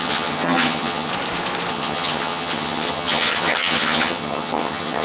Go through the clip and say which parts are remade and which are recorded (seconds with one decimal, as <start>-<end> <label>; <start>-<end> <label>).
0.0-1.1 remade; 1.1-1.7 recorded; 1.7-5.0 remade